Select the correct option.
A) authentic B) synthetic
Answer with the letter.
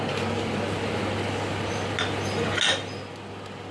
A